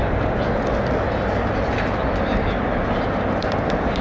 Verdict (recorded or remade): recorded